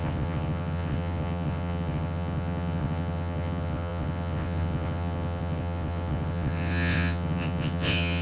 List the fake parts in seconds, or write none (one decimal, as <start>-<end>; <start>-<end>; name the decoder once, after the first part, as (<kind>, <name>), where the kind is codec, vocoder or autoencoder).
0.0-8.2 (vocoder, WaveNeXt)